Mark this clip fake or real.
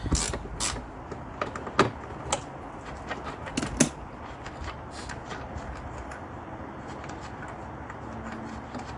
real